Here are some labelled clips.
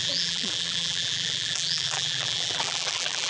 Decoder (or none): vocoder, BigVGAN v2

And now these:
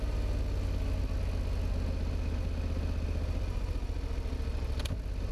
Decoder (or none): none